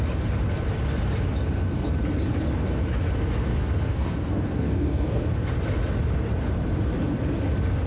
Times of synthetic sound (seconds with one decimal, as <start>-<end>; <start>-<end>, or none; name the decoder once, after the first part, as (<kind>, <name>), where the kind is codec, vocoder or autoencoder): 3.5-5.2 (codec, SNAC)